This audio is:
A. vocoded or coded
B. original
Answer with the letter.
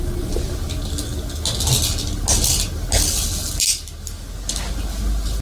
B